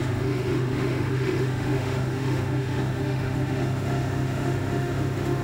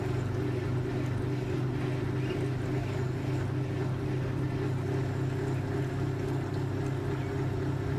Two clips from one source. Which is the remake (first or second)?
first